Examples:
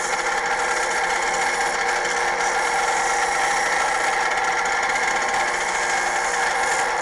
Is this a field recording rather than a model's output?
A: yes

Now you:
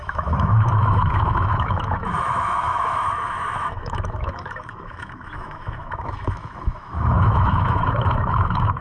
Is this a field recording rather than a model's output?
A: no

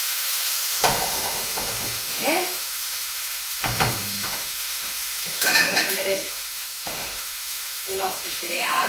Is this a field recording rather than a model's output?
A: no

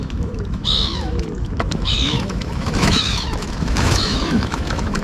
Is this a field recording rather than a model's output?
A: no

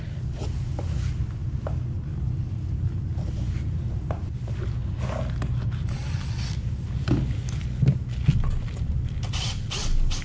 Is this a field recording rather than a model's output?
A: yes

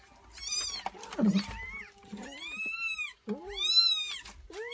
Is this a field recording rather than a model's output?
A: yes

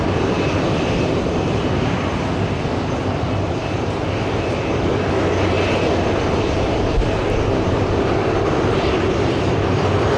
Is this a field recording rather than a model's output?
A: yes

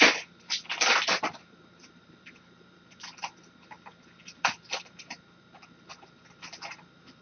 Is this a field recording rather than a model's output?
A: no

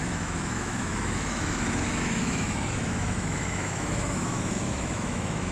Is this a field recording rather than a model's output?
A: no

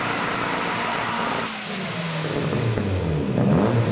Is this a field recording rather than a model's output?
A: yes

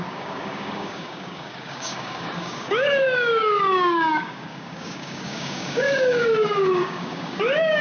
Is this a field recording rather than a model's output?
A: no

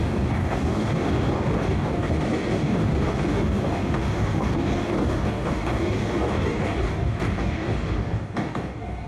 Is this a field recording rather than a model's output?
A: no